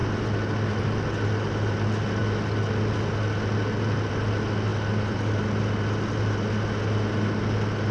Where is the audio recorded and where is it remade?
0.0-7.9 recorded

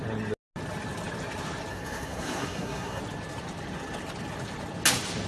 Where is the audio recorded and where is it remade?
0.0-1.7 recorded; 1.7-3.0 remade; 3.0-5.3 recorded

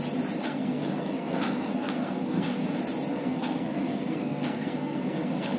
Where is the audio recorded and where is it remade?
0.0-0.4 recorded; 0.4-2.7 remade; 2.7-3.1 recorded; 3.1-5.6 remade

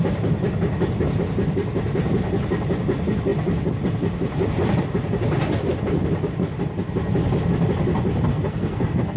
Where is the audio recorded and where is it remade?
0.0-8.3 recorded; 8.3-9.2 remade

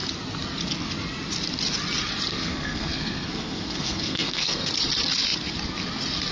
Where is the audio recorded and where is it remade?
0.0-2.3 recorded; 2.3-4.7 remade; 4.7-6.3 recorded

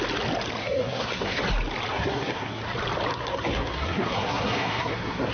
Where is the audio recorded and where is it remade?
0.0-0.6 recorded; 0.6-1.4 remade; 1.4-1.9 recorded; 1.9-2.6 remade; 2.6-3.1 recorded; 3.1-5.3 remade

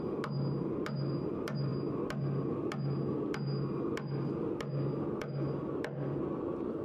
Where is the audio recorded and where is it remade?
0.0-6.8 recorded